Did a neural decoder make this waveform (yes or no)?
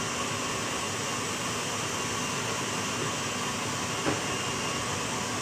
no